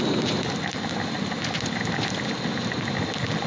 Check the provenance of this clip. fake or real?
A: real